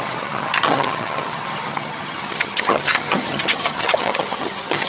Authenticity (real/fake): fake